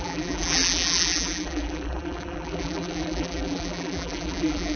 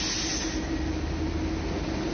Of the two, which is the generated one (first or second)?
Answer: first